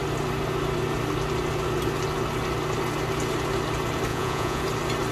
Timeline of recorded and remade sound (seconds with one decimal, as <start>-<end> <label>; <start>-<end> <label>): 0.0-4.1 recorded; 4.1-4.6 remade; 4.6-5.1 recorded

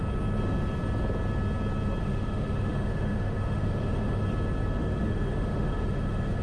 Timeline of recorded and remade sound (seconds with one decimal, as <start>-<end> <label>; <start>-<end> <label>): 0.0-2.0 recorded; 2.0-4.2 remade; 4.2-4.8 recorded; 4.8-6.4 remade